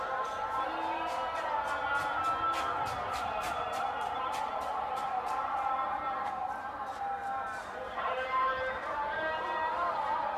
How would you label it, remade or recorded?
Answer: remade